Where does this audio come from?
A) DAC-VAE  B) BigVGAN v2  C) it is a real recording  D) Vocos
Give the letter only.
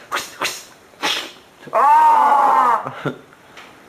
B